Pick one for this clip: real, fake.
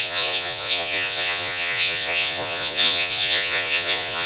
fake